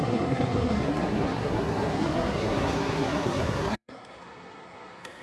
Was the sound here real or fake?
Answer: fake